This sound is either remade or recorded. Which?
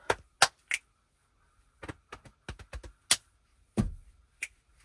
recorded